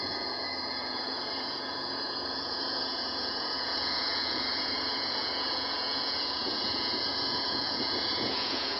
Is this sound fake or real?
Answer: fake